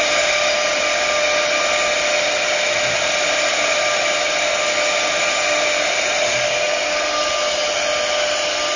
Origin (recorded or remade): recorded